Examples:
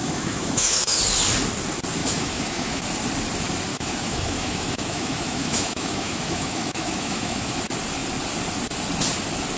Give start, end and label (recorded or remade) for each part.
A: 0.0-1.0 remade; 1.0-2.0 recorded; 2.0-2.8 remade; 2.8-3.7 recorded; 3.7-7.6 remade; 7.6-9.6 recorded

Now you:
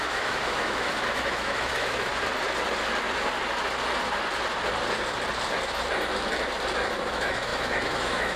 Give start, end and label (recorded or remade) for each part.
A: 0.0-2.1 remade; 2.1-7.1 recorded; 7.1-8.4 remade